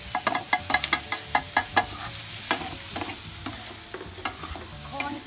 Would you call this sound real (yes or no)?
yes